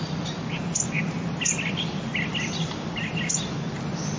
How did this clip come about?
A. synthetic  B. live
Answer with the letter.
B